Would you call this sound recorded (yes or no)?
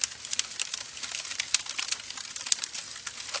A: yes